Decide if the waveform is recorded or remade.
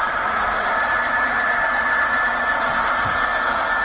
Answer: recorded